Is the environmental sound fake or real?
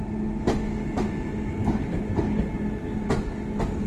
real